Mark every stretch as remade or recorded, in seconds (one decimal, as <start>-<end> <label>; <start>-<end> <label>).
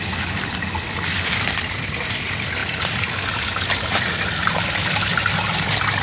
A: 0.0-4.4 recorded; 4.4-5.1 remade; 5.1-6.0 recorded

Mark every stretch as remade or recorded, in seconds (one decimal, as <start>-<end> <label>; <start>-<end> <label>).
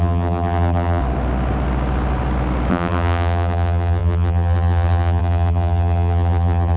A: 0.0-1.0 remade; 1.0-2.7 recorded; 2.7-6.8 remade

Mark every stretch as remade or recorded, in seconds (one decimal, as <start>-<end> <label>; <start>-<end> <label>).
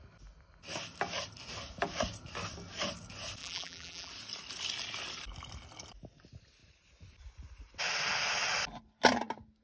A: 0.0-3.4 recorded; 3.4-4.1 remade; 4.1-9.6 recorded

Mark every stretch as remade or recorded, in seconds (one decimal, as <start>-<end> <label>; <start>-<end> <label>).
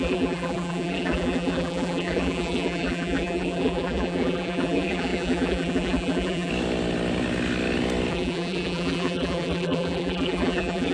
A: 0.0-6.5 remade; 6.5-8.1 recorded; 8.1-10.9 remade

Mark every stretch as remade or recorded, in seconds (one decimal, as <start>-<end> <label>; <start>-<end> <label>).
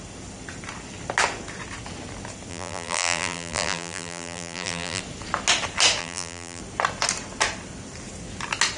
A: 0.0-2.5 recorded; 2.5-5.0 remade; 5.0-6.0 recorded; 6.0-6.6 remade; 6.6-8.8 recorded